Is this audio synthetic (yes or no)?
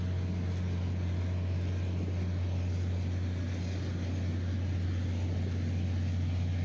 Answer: no